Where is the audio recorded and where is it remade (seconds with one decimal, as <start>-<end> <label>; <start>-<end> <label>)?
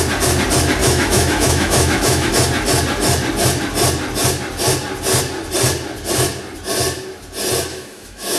0.0-0.8 recorded; 0.8-2.3 remade; 2.3-7.7 recorded; 7.7-8.4 remade